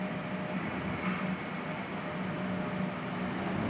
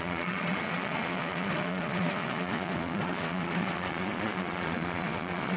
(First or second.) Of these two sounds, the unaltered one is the first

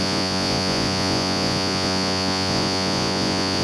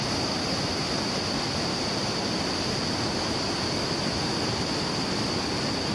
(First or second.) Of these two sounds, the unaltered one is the second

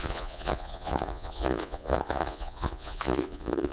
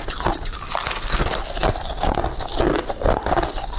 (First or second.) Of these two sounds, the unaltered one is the second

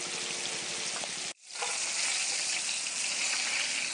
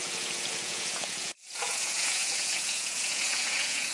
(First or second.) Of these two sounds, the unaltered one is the first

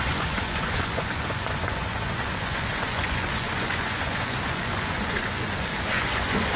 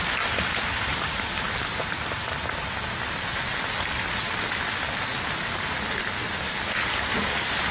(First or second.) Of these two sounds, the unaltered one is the second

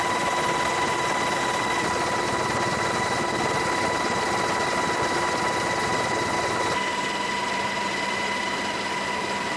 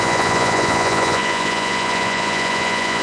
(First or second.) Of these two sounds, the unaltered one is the first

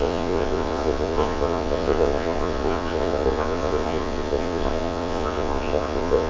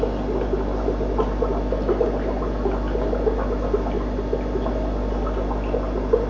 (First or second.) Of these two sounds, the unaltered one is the second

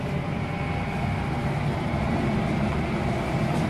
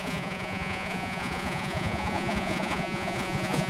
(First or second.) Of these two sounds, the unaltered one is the first